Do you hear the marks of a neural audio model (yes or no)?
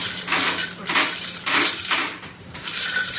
yes